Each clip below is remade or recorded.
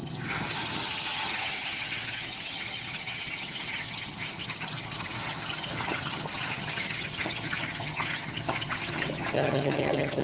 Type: remade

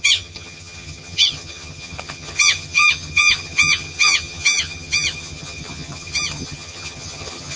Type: remade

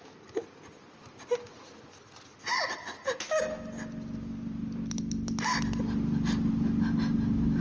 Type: recorded